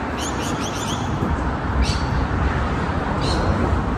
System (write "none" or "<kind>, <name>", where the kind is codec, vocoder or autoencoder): vocoder, BigVGAN v2